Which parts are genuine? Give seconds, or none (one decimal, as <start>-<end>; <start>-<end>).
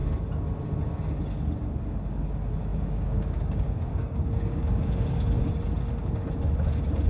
0.0-2.7; 5.1-7.1